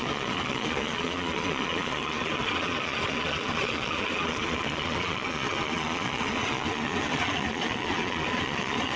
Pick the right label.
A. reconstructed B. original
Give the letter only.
A